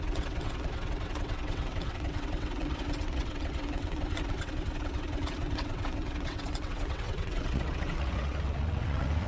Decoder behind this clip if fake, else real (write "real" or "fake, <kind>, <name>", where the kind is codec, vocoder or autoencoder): fake, vocoder, WaveNeXt